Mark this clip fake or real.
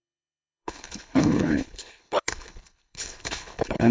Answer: fake